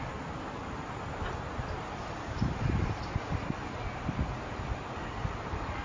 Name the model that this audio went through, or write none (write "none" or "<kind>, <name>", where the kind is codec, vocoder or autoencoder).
none